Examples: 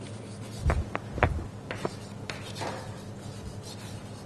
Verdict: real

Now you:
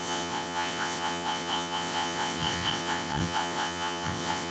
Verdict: fake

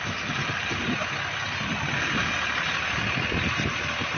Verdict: real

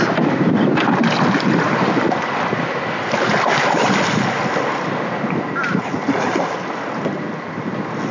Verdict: real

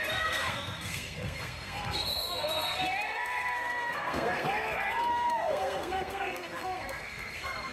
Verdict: fake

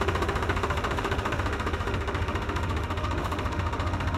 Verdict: fake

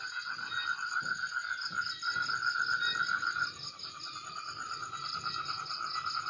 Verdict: real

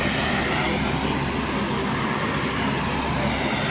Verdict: real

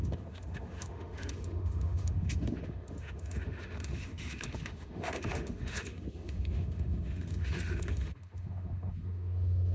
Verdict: fake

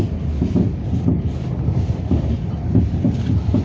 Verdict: real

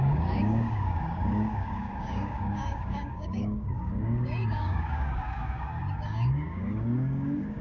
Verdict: fake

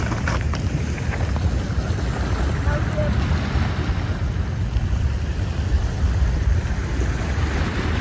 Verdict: real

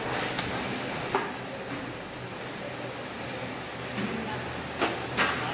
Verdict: real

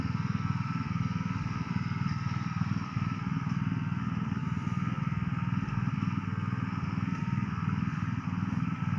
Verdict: fake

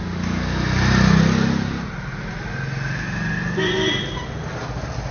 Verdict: real